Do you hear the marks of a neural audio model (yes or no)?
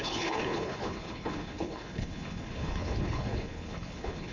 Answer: yes